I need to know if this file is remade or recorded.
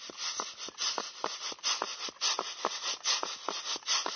recorded